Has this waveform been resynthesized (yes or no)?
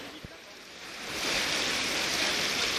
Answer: no